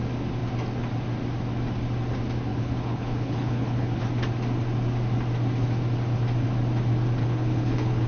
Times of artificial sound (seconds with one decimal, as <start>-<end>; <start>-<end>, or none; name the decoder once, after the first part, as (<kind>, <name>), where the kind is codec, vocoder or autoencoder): 2.5-4.0 (codec, HILCodec); 7.2-8.1